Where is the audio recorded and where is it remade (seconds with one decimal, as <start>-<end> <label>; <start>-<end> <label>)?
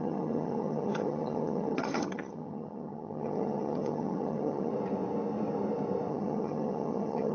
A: 0.0-4.7 remade; 4.7-6.1 recorded; 6.1-7.3 remade